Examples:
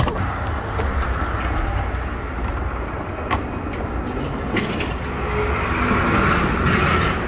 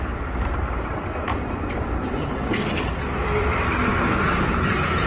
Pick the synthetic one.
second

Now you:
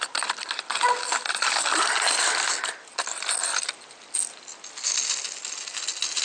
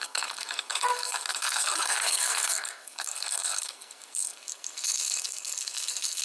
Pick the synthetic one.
second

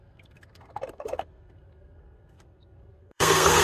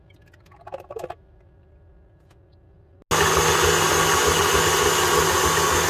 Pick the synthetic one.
first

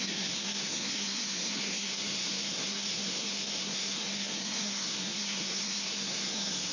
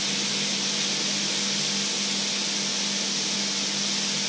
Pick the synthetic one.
first